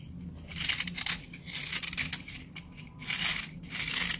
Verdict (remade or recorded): recorded